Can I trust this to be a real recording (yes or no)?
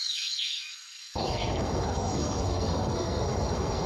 no